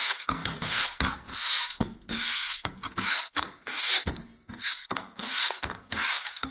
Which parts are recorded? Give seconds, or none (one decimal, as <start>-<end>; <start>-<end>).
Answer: none